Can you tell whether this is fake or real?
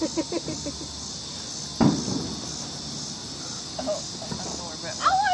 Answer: real